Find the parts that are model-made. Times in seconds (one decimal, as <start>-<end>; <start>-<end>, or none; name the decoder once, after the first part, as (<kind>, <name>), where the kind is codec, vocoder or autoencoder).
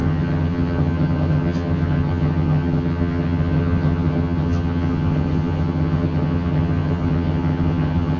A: 0.0-8.2 (vocoder, HiFi-GAN)